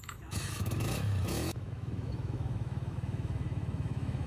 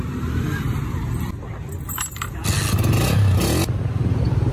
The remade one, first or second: first